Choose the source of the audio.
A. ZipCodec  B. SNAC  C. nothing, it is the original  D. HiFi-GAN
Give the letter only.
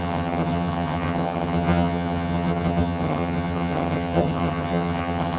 D